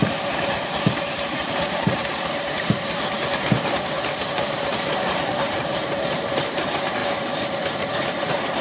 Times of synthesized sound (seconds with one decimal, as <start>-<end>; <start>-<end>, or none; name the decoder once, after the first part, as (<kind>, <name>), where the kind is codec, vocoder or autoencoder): 0.0-7.0 (vocoder, BigVGAN v2); 7.7-8.6